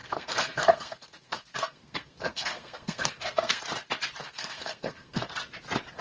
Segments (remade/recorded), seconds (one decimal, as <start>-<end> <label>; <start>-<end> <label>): 0.0-3.6 remade; 3.6-4.2 recorded; 4.2-5.3 remade; 5.3-6.0 recorded